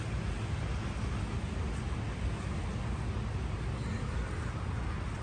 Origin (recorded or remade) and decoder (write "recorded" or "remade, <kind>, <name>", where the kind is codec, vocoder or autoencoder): recorded